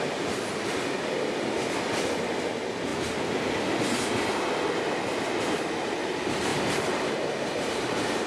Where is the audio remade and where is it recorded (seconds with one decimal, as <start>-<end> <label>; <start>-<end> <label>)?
0.0-6.5 recorded; 6.5-8.3 remade